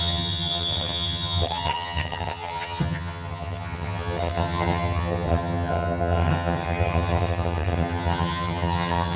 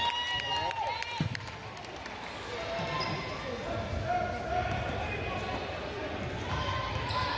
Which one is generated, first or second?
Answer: first